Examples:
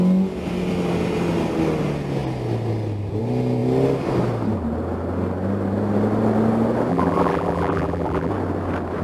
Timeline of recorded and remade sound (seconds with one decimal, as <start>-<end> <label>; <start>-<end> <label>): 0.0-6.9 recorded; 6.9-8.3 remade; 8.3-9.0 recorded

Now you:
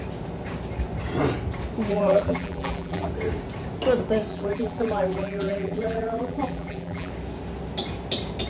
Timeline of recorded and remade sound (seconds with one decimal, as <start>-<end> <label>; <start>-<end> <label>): 0.0-1.9 recorded; 1.9-3.1 remade; 3.1-4.3 recorded; 4.3-7.1 remade; 7.1-8.5 recorded

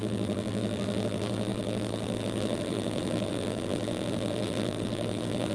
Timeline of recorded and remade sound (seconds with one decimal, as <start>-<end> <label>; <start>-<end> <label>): 0.0-5.5 remade

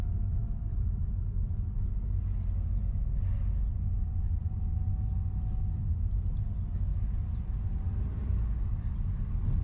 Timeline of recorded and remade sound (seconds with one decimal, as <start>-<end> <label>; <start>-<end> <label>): 0.0-0.4 recorded; 0.4-1.1 remade; 1.1-6.9 recorded; 6.9-9.2 remade; 9.2-9.6 recorded

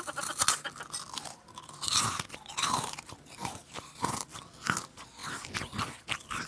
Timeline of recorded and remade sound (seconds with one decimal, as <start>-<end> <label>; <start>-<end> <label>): 0.0-3.4 recorded; 3.4-4.1 remade; 4.1-6.5 recorded

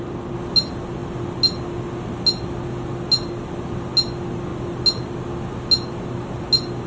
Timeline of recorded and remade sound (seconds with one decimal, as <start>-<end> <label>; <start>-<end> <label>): 0.0-6.9 recorded

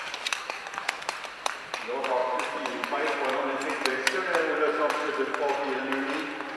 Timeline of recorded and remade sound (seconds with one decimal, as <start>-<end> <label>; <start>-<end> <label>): 0.0-2.2 recorded; 2.2-5.1 remade; 5.1-6.6 recorded